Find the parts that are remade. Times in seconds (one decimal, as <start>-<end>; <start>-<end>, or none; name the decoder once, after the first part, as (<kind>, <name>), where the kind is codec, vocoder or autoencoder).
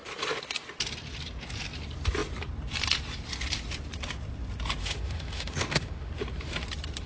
4.8-6.1 (autoencoder, DAC-VAE)